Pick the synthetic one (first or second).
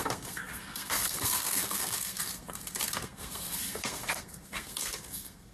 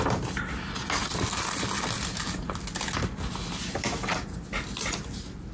first